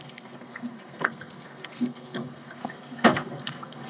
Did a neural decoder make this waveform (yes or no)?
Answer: yes